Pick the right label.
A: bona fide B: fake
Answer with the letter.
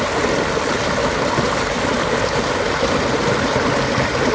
A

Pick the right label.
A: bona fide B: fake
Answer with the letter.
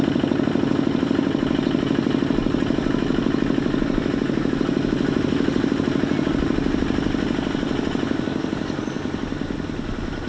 A